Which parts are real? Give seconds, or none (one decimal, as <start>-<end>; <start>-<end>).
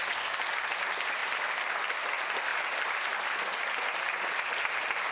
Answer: 0.0-1.2; 2.1-5.1